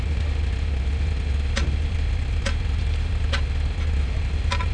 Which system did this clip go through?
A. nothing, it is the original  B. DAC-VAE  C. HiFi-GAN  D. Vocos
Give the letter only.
A